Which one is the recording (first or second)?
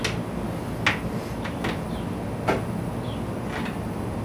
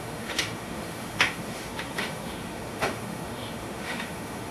first